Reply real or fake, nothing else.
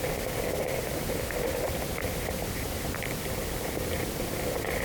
real